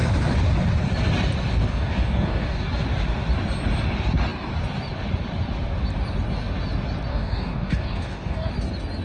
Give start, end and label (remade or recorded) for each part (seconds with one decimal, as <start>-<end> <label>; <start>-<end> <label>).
0.0-1.7 recorded; 1.7-2.7 remade; 2.7-7.1 recorded; 7.1-8.5 remade; 8.5-9.0 recorded